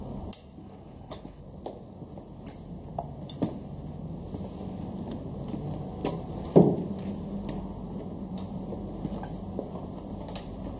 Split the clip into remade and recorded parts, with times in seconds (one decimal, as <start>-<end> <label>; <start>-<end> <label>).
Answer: 0.0-0.6 recorded; 0.6-1.4 remade; 1.4-10.8 recorded